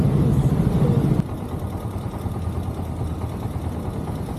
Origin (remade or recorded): recorded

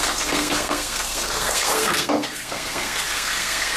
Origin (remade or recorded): remade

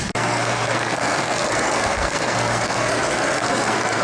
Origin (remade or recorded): remade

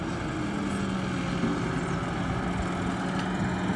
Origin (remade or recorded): recorded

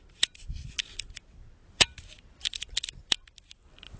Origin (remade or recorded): recorded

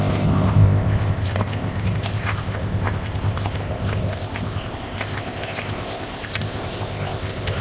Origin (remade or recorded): remade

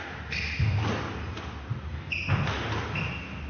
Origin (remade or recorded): recorded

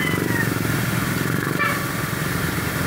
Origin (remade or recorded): recorded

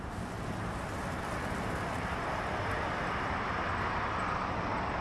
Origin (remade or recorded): recorded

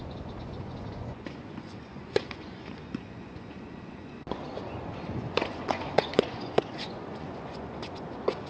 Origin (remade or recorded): remade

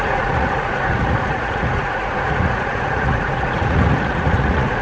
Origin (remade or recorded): remade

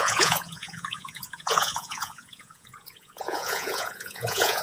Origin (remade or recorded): remade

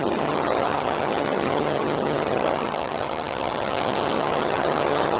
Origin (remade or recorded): remade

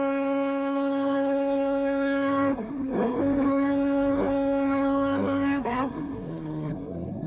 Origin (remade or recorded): remade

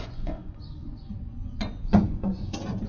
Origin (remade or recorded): remade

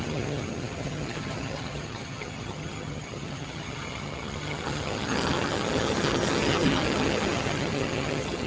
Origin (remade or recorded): remade